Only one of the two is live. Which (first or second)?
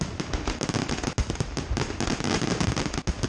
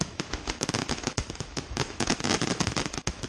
first